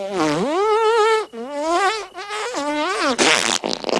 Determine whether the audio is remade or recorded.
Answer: recorded